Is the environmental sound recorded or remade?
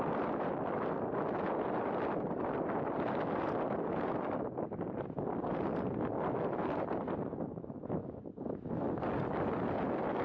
recorded